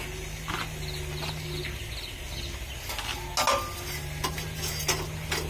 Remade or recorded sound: recorded